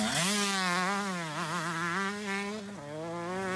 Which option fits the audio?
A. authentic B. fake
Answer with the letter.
A